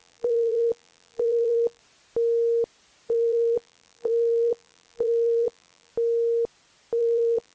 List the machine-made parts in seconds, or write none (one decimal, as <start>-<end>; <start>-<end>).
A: 0.0-1.8; 3.1-5.9; 7.0-7.5